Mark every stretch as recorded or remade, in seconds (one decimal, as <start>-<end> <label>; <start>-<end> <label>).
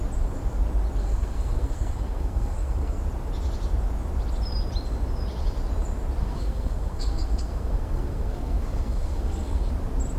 0.0-1.0 recorded; 1.0-3.0 remade; 3.0-6.2 recorded; 6.2-9.7 remade; 9.7-10.2 recorded